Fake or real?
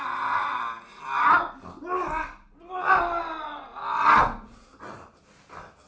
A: real